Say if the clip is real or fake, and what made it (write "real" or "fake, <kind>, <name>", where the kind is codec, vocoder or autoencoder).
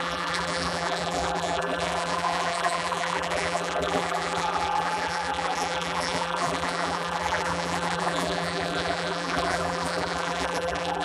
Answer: fake, vocoder, BigVGAN v2